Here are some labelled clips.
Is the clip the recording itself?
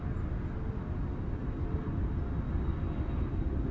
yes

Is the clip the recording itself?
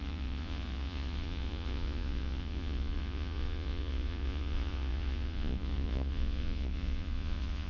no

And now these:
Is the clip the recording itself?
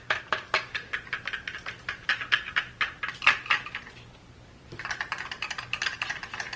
yes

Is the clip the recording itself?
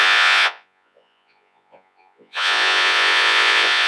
no